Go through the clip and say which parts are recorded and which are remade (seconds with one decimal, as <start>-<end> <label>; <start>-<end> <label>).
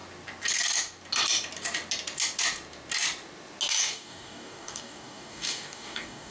0.0-3.8 recorded; 3.8-6.3 remade